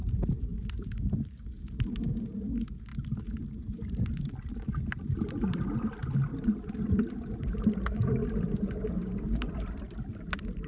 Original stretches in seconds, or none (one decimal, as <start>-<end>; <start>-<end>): 0.0-6.3; 10.1-10.7